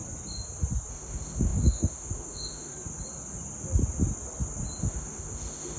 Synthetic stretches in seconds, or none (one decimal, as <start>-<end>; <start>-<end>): 0.9-2.7; 4.8-5.8